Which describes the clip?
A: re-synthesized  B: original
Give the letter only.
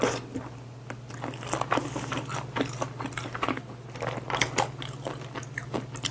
B